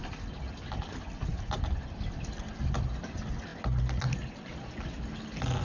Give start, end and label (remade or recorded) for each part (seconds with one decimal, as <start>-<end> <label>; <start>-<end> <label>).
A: 0.0-5.6 recorded